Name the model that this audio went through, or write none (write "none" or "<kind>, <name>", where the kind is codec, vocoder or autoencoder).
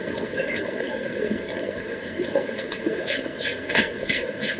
codec, SNAC